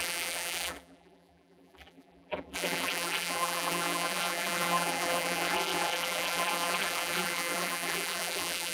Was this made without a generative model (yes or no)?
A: no